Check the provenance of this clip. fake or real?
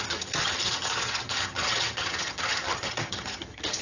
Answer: fake